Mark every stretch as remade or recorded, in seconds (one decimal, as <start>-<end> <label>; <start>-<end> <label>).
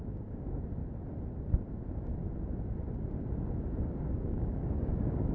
0.0-0.8 remade; 0.8-4.0 recorded; 4.0-5.3 remade